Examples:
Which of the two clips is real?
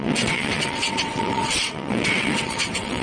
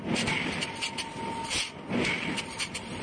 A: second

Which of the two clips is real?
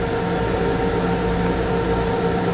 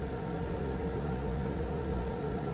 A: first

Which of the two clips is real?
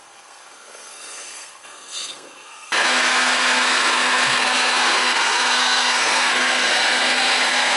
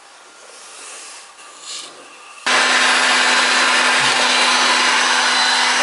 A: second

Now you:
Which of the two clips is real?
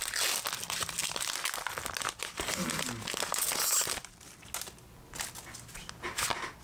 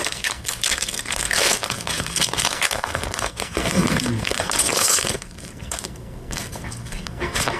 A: first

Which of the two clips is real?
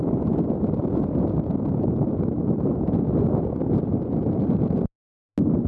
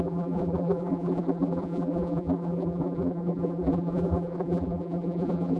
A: first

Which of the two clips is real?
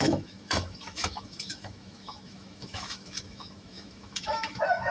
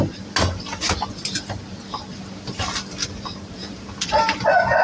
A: second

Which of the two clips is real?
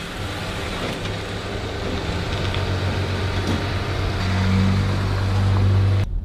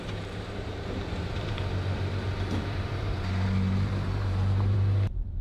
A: first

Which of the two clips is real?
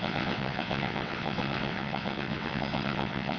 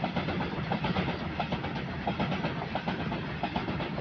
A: second